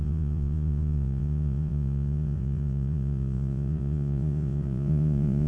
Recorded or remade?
remade